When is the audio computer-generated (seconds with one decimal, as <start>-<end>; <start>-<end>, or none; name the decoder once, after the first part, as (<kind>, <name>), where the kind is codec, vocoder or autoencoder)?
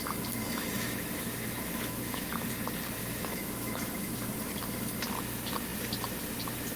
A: 0.4-2.5 (autoencoder, DAC-VAE); 3.0-4.3